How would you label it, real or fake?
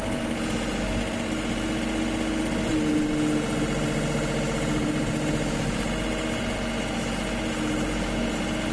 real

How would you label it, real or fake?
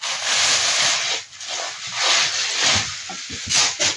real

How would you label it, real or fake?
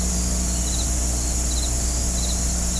real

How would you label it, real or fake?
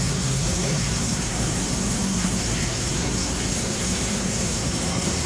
fake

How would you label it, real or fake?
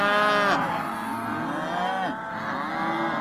real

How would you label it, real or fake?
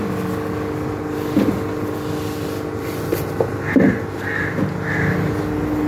real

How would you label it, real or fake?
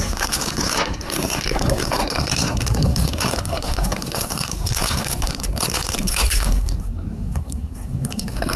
fake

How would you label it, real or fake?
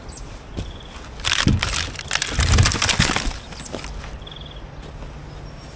real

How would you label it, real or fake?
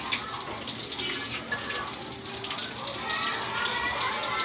real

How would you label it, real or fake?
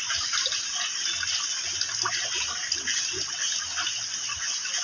real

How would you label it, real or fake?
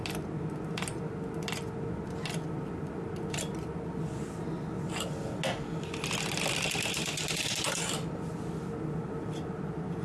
real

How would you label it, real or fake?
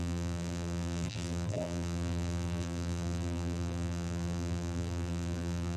fake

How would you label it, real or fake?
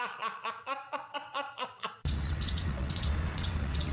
fake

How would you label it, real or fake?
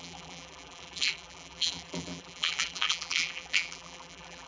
fake